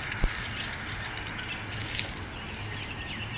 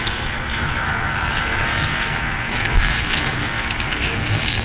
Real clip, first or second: first